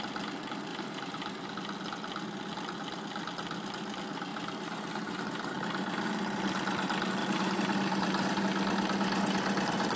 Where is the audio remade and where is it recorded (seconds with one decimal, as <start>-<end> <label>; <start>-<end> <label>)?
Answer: 0.0-0.7 recorded; 0.7-1.5 remade; 1.5-4.3 recorded; 4.3-5.2 remade; 5.2-7.2 recorded; 7.2-8.4 remade; 8.4-10.0 recorded